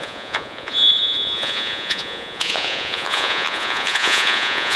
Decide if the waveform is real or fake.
fake